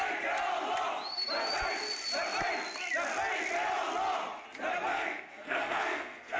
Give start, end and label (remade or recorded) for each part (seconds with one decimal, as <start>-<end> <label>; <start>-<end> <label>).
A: 0.0-4.9 recorded; 4.9-6.4 remade